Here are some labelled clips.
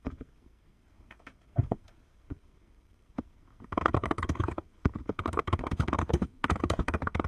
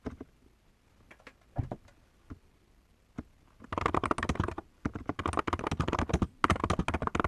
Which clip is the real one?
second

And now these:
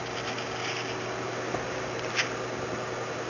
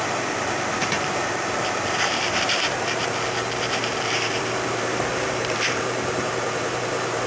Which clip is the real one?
first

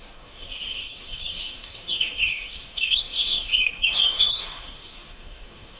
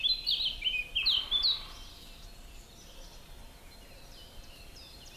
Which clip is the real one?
second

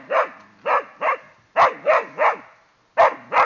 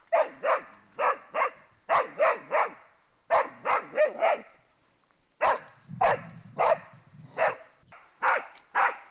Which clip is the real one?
first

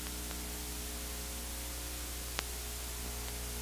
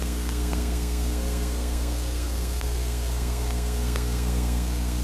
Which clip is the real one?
first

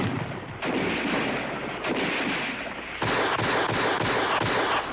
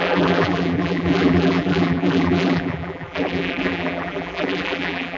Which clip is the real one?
first